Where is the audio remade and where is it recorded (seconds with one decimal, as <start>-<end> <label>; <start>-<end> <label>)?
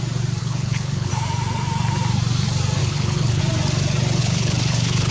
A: 0.0-0.4 recorded; 0.4-1.1 remade; 1.1-2.8 recorded; 2.8-3.4 remade; 3.4-4.2 recorded; 4.2-5.1 remade